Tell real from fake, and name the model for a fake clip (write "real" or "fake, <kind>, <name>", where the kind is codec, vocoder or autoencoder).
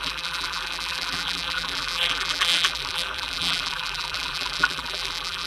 fake, vocoder, BigVGAN v2